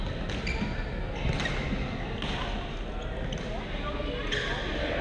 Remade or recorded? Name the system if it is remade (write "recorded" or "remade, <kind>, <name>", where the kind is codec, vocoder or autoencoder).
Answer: recorded